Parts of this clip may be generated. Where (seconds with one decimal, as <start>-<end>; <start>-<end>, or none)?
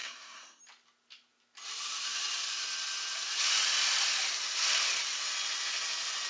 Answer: 0.0-0.6